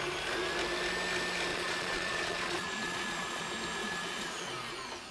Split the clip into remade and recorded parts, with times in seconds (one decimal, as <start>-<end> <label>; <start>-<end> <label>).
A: 0.0-1.5 recorded; 1.5-3.4 remade; 3.4-3.8 recorded; 3.8-4.5 remade; 4.5-5.1 recorded